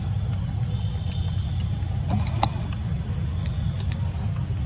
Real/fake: real